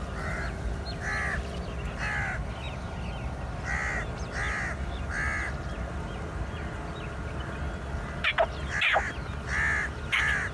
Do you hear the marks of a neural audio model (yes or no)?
no